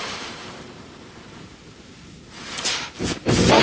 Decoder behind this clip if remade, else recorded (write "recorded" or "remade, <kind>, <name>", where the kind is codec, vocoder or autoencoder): remade, vocoder, BigVGAN v2